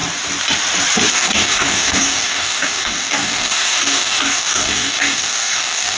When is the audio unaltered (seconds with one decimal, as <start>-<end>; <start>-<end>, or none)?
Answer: 0.0-1.1